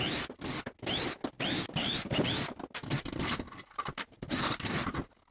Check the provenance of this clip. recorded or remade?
recorded